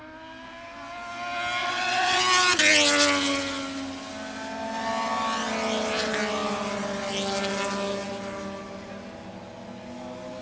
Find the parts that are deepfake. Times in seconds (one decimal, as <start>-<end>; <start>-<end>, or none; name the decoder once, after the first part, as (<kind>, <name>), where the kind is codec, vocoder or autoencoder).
1.6-2.2 (vocoder, WaveNeXt)

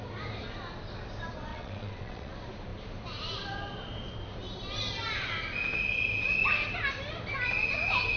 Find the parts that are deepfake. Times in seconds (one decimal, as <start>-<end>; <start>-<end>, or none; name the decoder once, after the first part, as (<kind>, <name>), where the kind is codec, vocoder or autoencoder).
1.5-2.3 (vocoder, WaveNeXt)

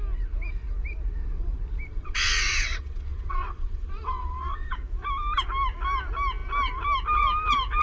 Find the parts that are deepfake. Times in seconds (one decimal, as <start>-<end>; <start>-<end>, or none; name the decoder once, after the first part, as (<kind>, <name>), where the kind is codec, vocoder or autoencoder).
1.9-4.7 (vocoder, WaveNeXt)